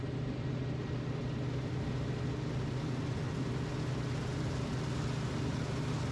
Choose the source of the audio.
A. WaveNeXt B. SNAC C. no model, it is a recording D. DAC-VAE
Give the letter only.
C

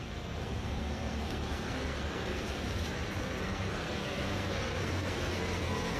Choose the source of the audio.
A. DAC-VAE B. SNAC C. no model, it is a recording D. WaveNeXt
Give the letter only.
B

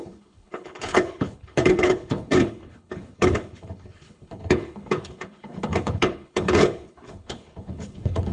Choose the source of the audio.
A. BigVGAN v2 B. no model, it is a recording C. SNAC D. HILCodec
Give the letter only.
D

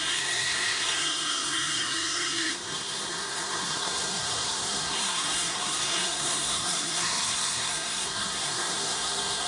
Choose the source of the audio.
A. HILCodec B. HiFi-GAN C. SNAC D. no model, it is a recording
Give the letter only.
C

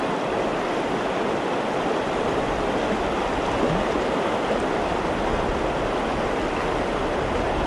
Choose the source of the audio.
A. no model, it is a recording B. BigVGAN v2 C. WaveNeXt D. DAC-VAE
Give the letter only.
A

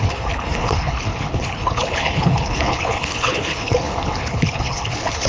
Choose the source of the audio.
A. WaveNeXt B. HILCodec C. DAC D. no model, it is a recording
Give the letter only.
B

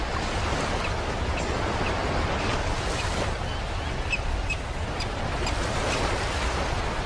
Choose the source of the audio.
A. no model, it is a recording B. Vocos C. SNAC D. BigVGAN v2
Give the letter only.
A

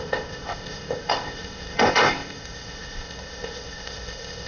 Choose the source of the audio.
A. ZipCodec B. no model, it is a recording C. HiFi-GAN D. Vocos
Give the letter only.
A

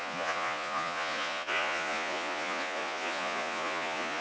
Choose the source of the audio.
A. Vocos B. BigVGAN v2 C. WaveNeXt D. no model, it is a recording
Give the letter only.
A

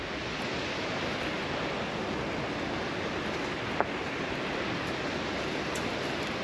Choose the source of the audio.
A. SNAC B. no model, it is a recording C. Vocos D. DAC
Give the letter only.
B